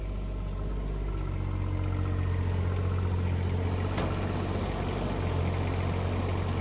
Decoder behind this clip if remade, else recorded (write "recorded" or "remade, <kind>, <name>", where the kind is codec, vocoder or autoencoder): recorded